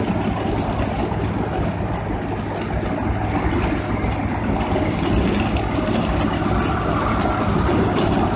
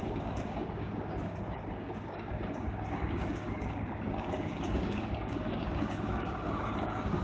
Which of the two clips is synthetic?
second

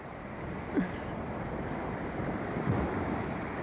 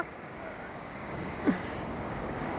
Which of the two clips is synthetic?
second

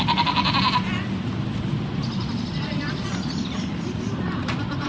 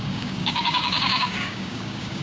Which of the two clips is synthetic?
second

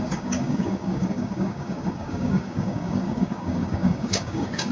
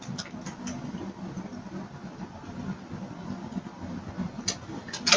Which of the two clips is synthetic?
first